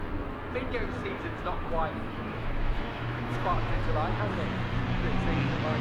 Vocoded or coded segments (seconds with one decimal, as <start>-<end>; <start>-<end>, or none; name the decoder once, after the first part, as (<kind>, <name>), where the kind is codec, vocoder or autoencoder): 1.0-3.8 (autoencoder, DAC-VAE)